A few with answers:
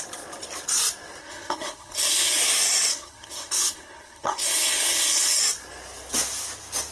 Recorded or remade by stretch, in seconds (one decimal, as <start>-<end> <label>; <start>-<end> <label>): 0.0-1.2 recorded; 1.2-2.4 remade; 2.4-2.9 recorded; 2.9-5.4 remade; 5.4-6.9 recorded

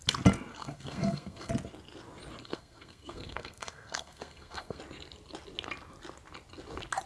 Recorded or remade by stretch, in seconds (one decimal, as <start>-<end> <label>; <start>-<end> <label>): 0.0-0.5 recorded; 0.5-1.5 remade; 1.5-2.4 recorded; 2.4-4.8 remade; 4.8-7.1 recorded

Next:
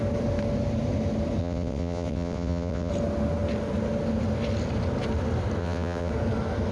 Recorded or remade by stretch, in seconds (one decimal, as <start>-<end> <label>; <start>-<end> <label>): 0.0-1.4 recorded; 1.4-2.9 remade; 2.9-5.6 recorded; 5.6-6.1 remade; 6.1-6.7 recorded